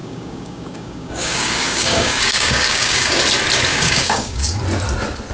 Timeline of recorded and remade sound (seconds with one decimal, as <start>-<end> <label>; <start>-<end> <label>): 0.0-3.2 remade; 3.2-3.7 recorded; 3.7-4.6 remade; 4.6-5.3 recorded